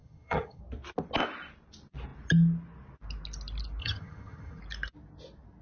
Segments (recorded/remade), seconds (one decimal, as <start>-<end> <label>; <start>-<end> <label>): 0.0-0.6 remade; 0.6-3.8 recorded; 3.8-4.6 remade; 4.6-5.6 recorded